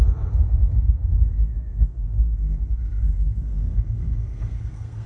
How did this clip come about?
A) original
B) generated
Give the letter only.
B